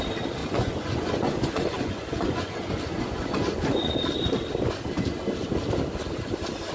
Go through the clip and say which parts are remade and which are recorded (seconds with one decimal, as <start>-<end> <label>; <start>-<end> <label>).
0.0-0.4 recorded; 0.4-3.9 remade; 3.9-6.7 recorded